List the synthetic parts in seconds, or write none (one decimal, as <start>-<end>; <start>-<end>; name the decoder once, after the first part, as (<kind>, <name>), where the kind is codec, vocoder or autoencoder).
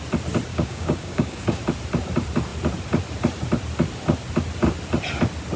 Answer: 0.5-1.6 (codec, DAC)